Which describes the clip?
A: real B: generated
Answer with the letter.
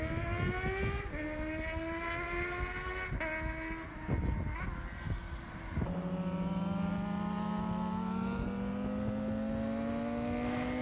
A